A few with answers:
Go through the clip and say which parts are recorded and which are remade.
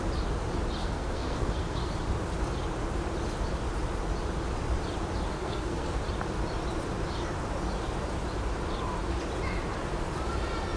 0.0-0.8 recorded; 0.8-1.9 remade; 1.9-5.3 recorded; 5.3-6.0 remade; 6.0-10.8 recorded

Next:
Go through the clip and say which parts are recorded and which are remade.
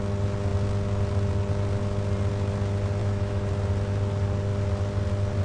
0.0-3.0 recorded; 3.0-3.5 remade; 3.5-5.4 recorded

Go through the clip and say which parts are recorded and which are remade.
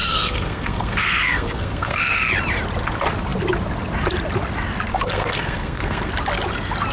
0.0-2.3 remade; 2.3-4.9 recorded; 4.9-6.1 remade; 6.1-6.9 recorded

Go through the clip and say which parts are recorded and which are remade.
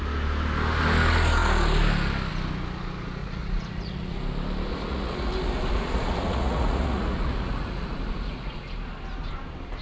0.0-3.2 recorded; 3.2-4.2 remade; 4.2-4.7 recorded; 4.7-8.6 remade; 8.6-9.8 recorded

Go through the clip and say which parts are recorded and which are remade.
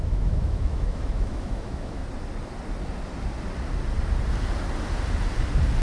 0.0-2.0 remade; 2.0-5.8 recorded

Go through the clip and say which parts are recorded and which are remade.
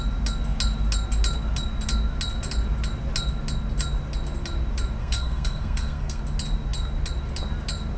0.0-5.0 recorded; 5.0-6.2 remade; 6.2-8.0 recorded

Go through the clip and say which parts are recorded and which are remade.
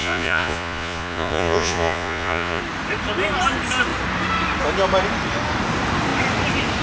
0.0-2.6 remade; 2.6-6.8 recorded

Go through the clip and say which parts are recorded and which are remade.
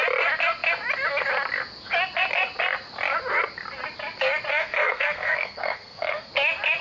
0.0-4.5 recorded; 4.5-6.3 remade; 6.3-6.8 recorded